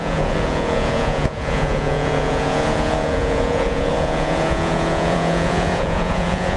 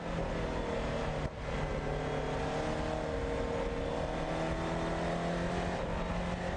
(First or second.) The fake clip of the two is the first